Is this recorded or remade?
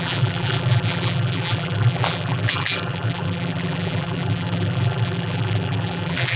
remade